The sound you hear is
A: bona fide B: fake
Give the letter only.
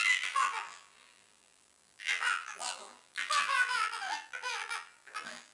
B